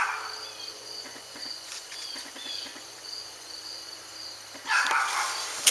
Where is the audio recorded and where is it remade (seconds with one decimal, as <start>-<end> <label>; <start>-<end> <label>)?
0.0-0.7 recorded; 0.7-4.1 remade; 4.1-5.7 recorded